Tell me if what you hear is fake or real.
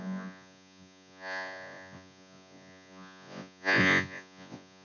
fake